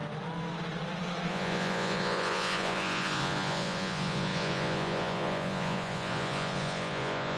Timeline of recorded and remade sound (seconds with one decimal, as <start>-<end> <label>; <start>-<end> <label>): 0.0-1.3 recorded; 1.3-7.4 remade